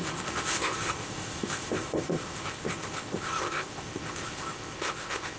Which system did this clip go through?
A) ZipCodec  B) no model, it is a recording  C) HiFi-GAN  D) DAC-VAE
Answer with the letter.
A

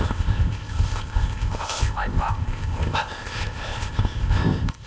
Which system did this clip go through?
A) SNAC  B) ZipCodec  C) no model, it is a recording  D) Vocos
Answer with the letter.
B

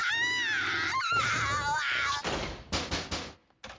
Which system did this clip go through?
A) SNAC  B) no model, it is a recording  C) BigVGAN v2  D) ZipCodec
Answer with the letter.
B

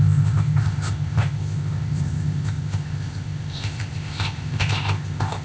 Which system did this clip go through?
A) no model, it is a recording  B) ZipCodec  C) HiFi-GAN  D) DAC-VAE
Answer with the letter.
B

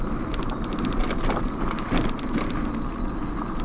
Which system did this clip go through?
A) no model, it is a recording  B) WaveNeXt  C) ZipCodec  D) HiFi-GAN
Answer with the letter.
A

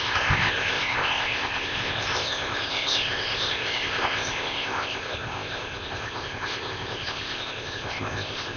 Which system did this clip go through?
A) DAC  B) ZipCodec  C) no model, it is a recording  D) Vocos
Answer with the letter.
B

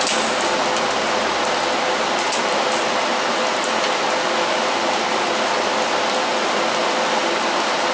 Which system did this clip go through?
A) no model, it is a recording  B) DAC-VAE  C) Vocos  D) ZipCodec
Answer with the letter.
A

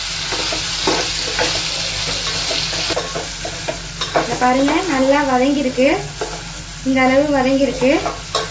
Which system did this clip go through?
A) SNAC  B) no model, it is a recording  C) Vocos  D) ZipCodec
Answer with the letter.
B